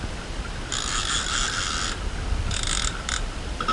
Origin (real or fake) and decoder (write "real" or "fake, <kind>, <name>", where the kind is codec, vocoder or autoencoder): real